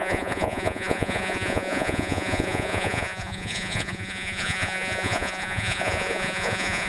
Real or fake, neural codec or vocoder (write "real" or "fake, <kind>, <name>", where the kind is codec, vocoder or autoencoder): fake, vocoder, Vocos